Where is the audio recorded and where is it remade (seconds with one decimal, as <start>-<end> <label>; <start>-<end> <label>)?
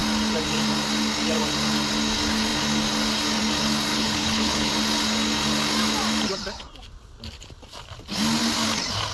0.0-3.9 recorded; 3.9-4.7 remade; 4.7-9.1 recorded